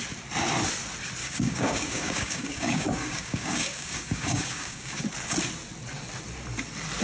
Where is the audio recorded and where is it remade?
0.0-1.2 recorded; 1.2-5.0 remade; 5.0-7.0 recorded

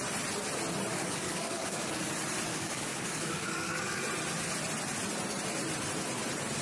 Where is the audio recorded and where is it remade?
0.0-0.9 recorded; 0.9-2.0 remade; 2.0-2.5 recorded; 2.5-4.0 remade; 4.0-6.6 recorded

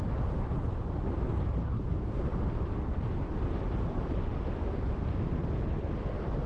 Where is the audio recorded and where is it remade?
0.0-1.6 recorded; 1.6-2.2 remade; 2.2-6.5 recorded

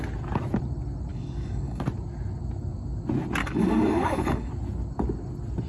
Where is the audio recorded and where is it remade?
0.0-1.1 recorded; 1.1-1.8 remade; 1.8-3.4 recorded; 3.4-4.5 remade; 4.5-5.7 recorded

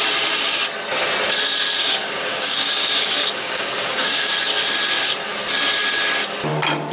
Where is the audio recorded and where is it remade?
0.0-1.8 recorded; 1.8-4.3 remade; 4.3-6.9 recorded

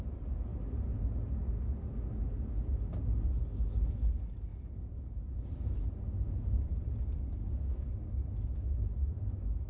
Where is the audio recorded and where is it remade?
0.0-6.1 recorded; 6.1-6.7 remade; 6.7-9.7 recorded